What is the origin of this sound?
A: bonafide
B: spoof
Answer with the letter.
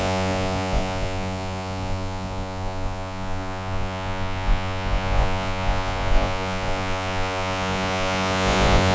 B